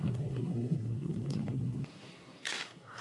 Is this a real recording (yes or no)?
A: no